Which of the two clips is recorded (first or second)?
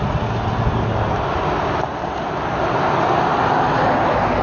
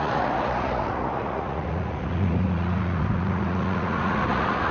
first